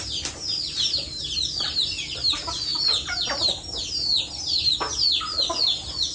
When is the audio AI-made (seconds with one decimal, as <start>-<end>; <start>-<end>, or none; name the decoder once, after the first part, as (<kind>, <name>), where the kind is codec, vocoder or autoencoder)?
none